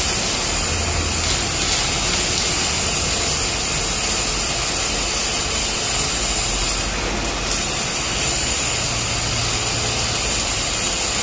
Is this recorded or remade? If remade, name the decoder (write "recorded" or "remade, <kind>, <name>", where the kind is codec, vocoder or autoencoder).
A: recorded